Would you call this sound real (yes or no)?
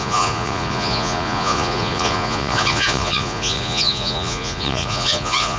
no